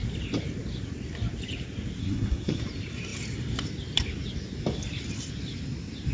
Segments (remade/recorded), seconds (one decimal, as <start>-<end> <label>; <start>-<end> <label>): 0.0-2.0 recorded; 2.0-2.6 remade; 2.6-6.1 recorded